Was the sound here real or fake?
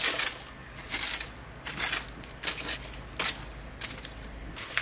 real